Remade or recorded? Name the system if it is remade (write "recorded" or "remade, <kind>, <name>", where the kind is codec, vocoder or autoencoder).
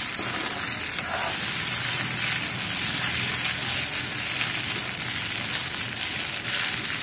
recorded